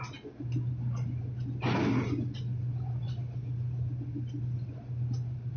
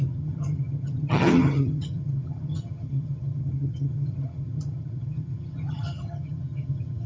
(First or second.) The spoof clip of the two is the second